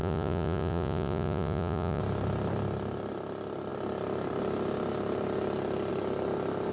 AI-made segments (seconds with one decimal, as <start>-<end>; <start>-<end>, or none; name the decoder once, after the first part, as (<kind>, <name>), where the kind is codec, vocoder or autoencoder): 0.0-2.0 (vocoder, Vocos)